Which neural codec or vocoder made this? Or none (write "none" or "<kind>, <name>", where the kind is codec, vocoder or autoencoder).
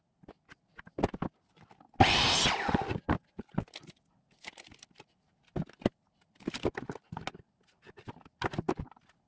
none